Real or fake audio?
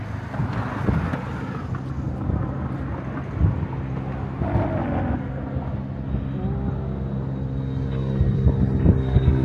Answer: real